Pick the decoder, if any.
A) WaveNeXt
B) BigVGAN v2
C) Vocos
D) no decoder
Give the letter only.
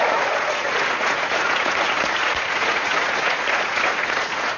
C